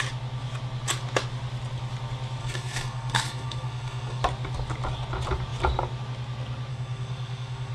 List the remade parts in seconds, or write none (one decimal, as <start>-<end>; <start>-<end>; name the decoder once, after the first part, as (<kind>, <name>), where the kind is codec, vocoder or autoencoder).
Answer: 2.4-4.2 (codec, SNAC); 6.7-7.7